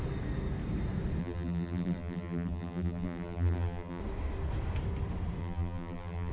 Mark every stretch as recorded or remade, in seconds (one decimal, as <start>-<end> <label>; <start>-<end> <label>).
0.0-1.2 recorded; 1.2-4.0 remade; 4.0-5.4 recorded; 5.4-6.3 remade